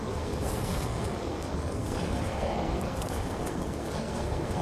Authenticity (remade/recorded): remade